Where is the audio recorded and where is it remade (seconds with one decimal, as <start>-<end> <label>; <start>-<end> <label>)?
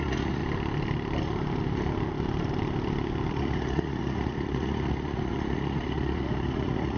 0.0-0.4 remade; 0.4-3.3 recorded; 3.3-7.0 remade